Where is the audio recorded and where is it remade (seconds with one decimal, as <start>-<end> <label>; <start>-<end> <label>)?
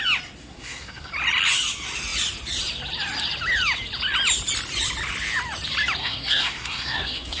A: 0.0-0.4 recorded; 0.4-1.1 remade; 1.1-6.0 recorded; 6.0-7.4 remade